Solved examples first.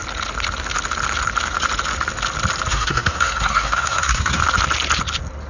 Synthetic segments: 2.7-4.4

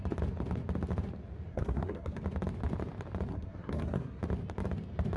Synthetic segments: 1.5-2.2; 3.3-4.2

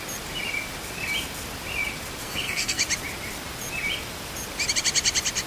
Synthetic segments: 2.2-2.8

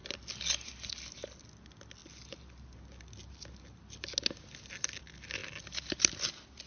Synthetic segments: none

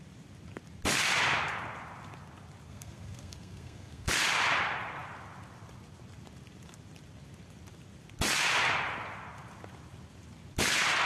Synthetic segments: 2.7-4.1

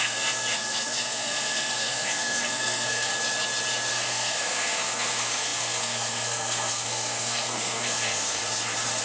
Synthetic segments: 0.0-3.1; 3.9-8.4

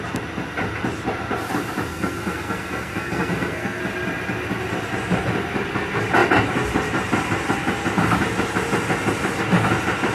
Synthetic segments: 1.9-3.8